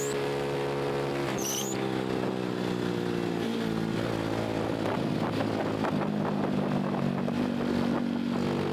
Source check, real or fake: real